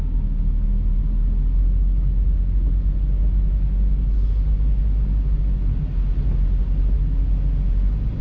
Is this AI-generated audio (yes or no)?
no